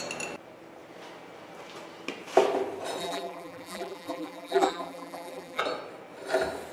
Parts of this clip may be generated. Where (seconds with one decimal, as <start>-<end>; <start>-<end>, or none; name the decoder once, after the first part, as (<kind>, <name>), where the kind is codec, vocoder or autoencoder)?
3.0-5.6 (vocoder, BigVGAN v2)